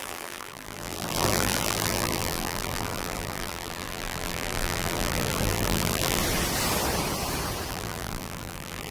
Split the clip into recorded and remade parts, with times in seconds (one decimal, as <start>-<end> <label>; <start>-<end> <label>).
0.0-6.2 remade; 6.2-7.7 recorded; 7.7-8.9 remade